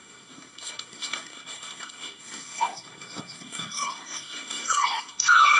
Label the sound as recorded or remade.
remade